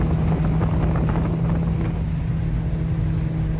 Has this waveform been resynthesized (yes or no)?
no